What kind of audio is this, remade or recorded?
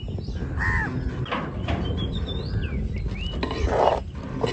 recorded